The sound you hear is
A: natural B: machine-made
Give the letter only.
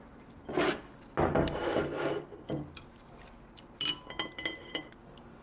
A